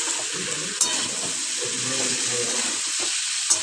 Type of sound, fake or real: real